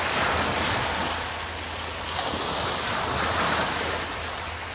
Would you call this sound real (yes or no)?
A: yes